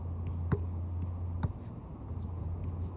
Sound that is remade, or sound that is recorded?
recorded